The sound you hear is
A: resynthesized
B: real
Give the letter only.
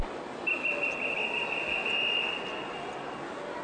B